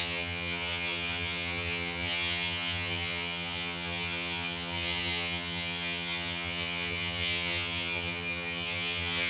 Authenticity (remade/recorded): remade